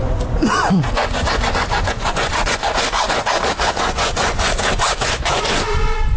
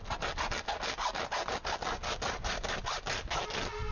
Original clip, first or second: second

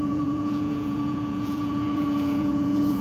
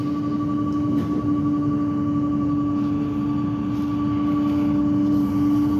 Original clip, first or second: second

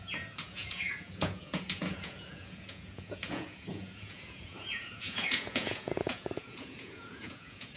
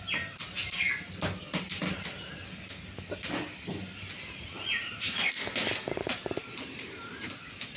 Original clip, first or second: second